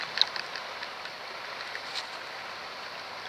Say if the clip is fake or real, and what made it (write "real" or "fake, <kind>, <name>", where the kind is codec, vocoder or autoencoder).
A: real